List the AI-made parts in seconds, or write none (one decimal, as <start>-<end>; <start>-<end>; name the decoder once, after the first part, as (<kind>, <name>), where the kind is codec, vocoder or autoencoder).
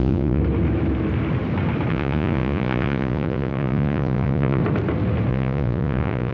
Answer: 0.0-0.4 (vocoder, Vocos); 1.9-4.6; 5.3-6.3